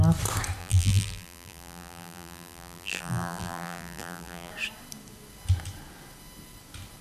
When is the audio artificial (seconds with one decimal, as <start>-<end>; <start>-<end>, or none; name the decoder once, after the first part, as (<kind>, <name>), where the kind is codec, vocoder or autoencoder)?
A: 0.6-4.5 (vocoder, BigVGAN v2)